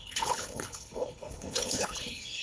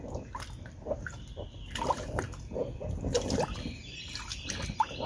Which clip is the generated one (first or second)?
first